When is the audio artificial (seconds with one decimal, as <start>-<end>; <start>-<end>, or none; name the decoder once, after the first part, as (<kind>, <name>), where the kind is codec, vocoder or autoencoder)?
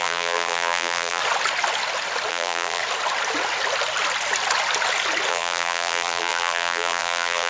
0.0-1.2 (vocoder, BigVGAN v2); 2.3-2.8; 5.3-7.5